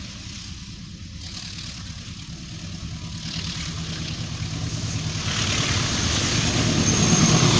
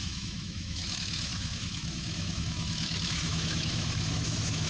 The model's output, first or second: second